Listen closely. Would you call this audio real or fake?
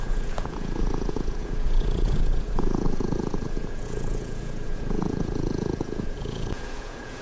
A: fake